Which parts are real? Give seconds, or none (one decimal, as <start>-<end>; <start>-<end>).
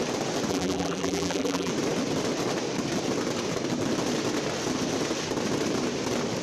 0.0-0.5; 1.7-6.4